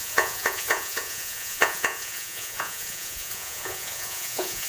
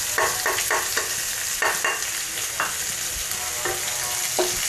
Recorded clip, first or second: second